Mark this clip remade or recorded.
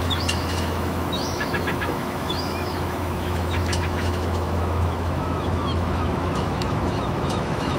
remade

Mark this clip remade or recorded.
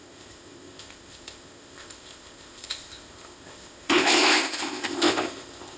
remade